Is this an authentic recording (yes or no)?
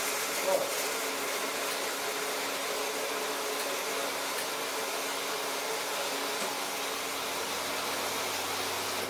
yes